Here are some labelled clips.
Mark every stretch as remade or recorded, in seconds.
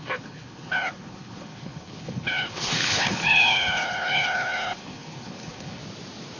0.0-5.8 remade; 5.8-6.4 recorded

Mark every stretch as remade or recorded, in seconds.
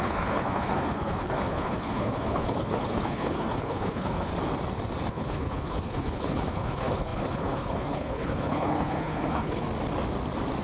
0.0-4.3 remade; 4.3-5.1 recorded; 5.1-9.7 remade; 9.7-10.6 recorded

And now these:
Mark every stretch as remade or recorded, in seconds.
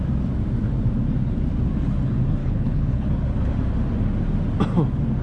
0.0-2.4 recorded; 2.4-3.1 remade; 3.1-5.2 recorded